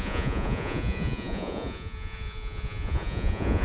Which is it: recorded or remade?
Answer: remade